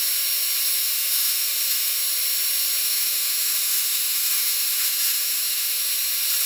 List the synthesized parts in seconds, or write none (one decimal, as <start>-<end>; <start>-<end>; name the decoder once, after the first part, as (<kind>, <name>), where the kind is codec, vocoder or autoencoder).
0.8-2.0 (autoencoder, DAC-VAE); 2.8-5.8